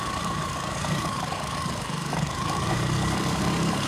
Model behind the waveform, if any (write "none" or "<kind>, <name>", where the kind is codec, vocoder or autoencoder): codec, DAC